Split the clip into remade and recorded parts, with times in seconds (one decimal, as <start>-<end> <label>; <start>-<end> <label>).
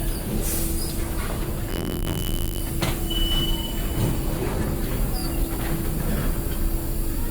0.0-1.7 recorded; 1.7-2.6 remade; 2.6-7.3 recorded